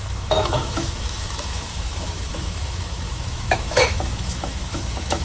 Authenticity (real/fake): fake